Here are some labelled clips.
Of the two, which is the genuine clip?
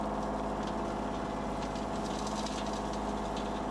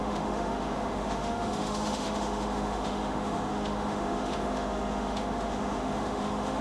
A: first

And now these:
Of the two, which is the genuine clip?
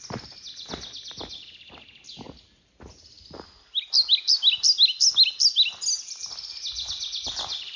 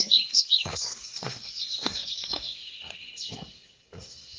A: first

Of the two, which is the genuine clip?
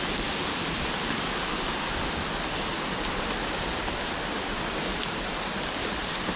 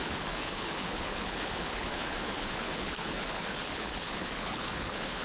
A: first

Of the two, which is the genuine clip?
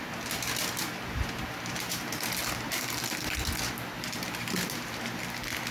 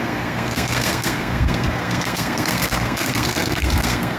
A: first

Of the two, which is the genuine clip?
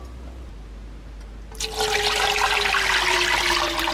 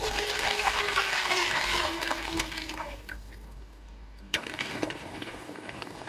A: first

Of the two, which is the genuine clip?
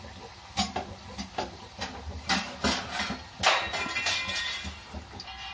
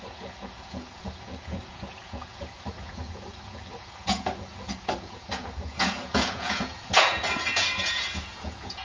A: first